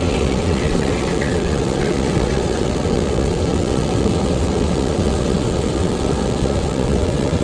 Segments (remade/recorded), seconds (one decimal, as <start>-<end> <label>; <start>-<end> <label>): 0.0-7.4 remade